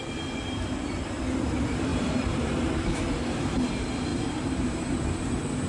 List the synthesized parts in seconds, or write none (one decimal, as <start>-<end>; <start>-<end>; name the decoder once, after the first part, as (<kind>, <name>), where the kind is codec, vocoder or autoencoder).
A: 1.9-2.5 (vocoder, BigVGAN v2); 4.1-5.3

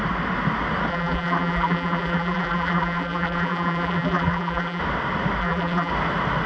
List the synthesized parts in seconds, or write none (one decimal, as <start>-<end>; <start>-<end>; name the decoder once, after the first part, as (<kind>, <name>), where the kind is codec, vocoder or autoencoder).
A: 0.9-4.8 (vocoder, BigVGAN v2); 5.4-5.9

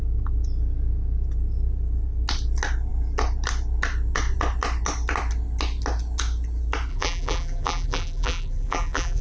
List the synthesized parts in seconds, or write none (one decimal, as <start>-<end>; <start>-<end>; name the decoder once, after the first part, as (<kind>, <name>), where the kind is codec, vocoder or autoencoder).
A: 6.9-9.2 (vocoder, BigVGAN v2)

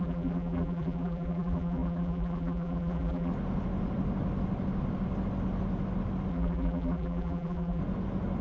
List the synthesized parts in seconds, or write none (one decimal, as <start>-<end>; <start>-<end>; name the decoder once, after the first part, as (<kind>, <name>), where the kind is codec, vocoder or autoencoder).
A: 0.0-3.3 (vocoder, BigVGAN v2); 6.3-7.8